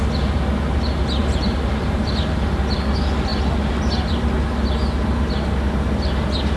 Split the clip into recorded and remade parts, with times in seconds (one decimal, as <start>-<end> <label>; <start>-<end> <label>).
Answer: 0.0-1.2 recorded; 1.2-2.1 remade; 2.1-6.6 recorded